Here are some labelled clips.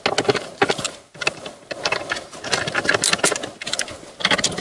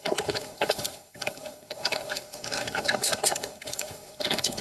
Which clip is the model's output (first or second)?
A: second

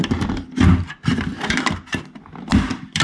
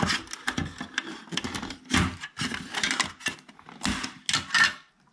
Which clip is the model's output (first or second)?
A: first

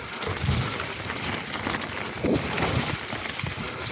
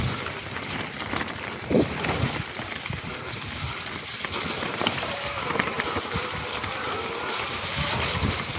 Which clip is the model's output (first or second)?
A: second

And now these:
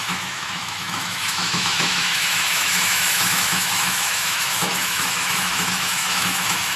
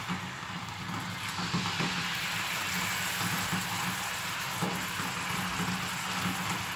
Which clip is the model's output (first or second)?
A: first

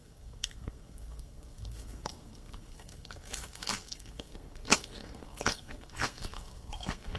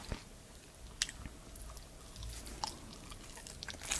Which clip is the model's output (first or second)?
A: first